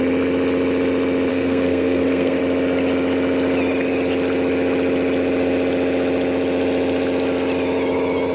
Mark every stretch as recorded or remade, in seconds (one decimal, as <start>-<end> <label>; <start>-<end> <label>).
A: 0.0-1.3 recorded; 1.3-2.4 remade; 2.4-8.3 recorded